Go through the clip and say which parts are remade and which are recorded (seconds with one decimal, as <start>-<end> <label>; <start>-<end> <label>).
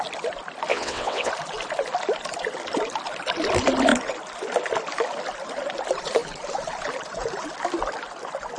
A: 0.0-0.7 recorded; 0.7-1.3 remade; 1.3-8.6 recorded